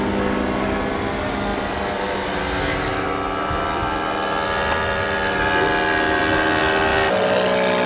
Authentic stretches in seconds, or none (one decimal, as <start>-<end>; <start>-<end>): 0.0-7.9